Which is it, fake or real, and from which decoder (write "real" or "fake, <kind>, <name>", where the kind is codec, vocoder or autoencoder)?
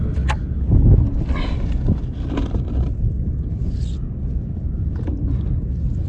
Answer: real